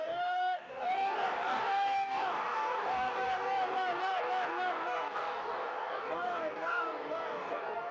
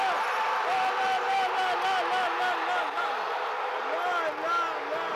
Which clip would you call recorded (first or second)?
second